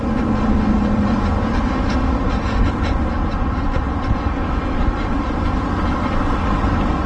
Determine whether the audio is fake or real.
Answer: real